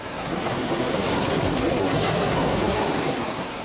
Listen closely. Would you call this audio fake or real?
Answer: fake